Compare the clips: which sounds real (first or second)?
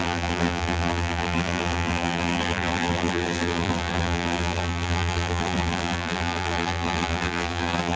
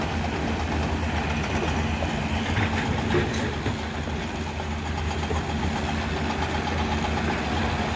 second